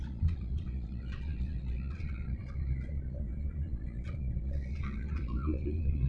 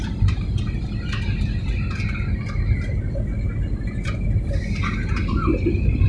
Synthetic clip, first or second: first